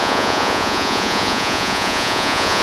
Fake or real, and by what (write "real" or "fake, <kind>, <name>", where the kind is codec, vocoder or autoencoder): fake, vocoder, Vocos